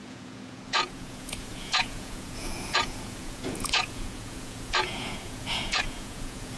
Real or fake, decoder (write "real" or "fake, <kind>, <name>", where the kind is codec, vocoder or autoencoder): fake, vocoder, Vocos